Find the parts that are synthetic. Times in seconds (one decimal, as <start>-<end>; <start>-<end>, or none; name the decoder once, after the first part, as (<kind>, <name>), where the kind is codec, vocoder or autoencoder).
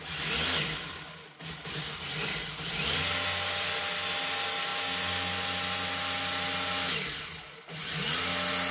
none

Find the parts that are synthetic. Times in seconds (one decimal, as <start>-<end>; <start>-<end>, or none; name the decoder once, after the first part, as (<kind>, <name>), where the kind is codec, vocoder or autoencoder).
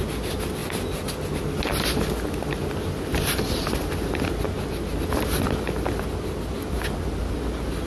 none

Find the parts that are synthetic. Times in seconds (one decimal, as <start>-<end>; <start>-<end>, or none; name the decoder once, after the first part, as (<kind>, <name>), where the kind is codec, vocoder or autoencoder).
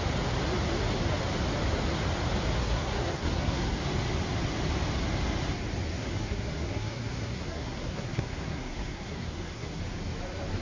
2.6-3.8 (codec, SNAC); 5.9-9.8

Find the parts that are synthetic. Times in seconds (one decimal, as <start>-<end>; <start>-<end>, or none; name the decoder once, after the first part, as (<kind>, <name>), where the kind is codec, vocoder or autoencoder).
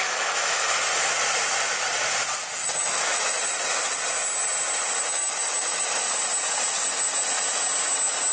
0.0-0.8 (autoencoder, DAC-VAE); 2.6-3.4; 5.1-6.1